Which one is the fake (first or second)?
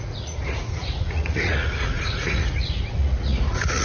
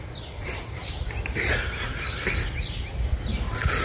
first